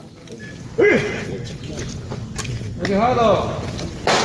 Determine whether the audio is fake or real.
real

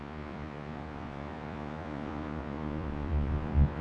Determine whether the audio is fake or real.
fake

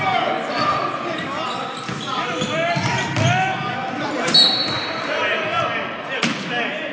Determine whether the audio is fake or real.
real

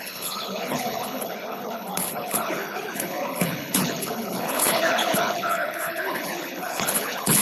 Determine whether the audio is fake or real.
fake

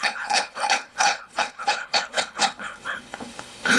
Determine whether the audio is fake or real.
fake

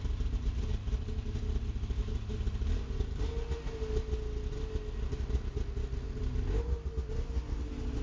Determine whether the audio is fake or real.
real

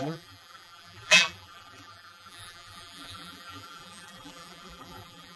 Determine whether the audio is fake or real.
fake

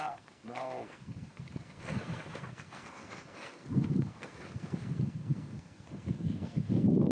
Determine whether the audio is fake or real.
fake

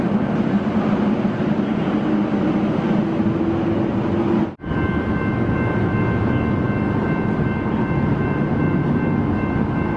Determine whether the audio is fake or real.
real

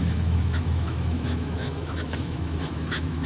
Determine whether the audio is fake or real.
fake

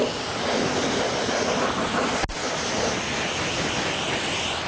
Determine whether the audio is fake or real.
real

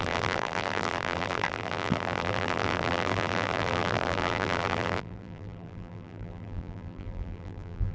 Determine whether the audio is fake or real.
fake